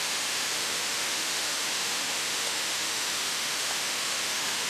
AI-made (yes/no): yes